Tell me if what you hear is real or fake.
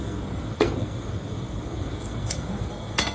fake